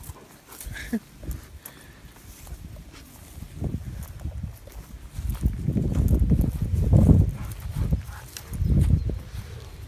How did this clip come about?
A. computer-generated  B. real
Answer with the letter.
B